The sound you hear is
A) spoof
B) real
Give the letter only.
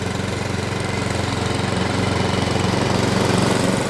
A